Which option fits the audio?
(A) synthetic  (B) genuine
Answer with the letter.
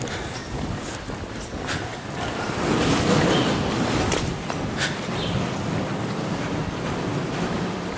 B